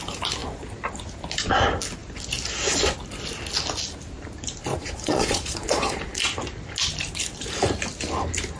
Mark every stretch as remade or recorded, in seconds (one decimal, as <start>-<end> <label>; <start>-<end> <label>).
0.0-4.7 recorded; 4.7-6.2 remade; 6.2-8.6 recorded

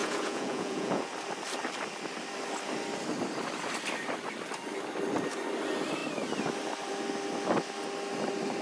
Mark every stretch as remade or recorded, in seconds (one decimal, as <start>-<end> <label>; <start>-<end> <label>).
0.0-1.0 remade; 1.0-8.6 recorded

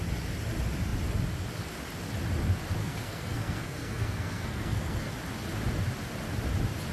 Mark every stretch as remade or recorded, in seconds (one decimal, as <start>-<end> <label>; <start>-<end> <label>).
0.0-2.8 recorded; 2.8-5.1 remade; 5.1-6.9 recorded

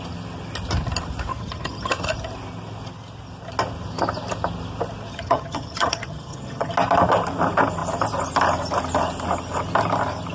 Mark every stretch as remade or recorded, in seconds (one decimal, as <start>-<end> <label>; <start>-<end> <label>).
0.0-1.3 recorded; 1.3-1.9 remade; 1.9-5.1 recorded; 5.1-6.7 remade; 6.7-10.3 recorded

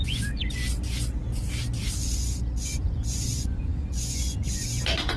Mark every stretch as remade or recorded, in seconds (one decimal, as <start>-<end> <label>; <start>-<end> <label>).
0.0-0.6 remade; 0.6-2.7 recorded; 2.7-5.2 remade

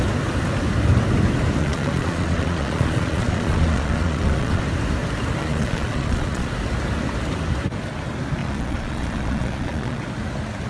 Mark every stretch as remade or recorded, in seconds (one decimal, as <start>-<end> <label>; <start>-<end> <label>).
0.0-1.6 recorded; 1.6-4.6 remade; 4.6-5.4 recorded; 5.4-6.5 remade; 6.5-8.4 recorded; 8.4-10.0 remade; 10.0-10.7 recorded

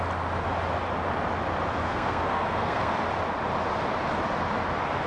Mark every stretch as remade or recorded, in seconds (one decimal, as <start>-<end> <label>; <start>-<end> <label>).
0.0-1.8 recorded; 1.8-2.9 remade; 2.9-5.1 recorded

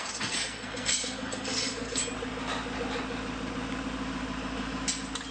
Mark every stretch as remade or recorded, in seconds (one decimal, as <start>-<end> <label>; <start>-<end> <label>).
0.0-2.0 remade; 2.0-5.3 recorded